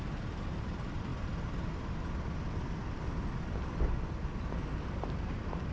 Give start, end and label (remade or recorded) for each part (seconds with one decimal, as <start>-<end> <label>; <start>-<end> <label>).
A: 0.0-1.1 remade; 1.1-4.5 recorded; 4.5-5.7 remade